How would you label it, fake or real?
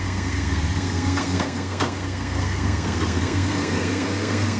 fake